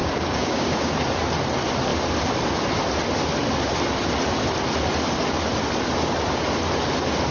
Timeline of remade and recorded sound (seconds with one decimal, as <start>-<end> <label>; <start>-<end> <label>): 0.0-0.9 remade; 0.9-7.3 recorded